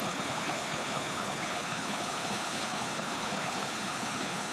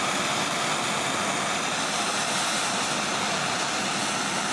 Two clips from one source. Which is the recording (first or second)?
second